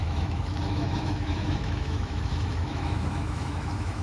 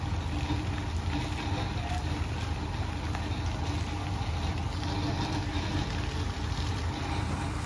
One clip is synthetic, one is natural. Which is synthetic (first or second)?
first